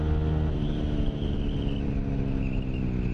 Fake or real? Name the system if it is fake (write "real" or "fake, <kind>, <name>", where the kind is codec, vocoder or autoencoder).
real